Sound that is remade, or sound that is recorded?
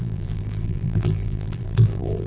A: remade